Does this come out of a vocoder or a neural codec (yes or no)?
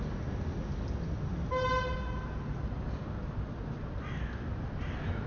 no